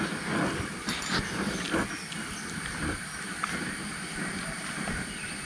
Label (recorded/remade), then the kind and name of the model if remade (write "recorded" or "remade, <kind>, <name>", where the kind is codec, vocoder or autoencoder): recorded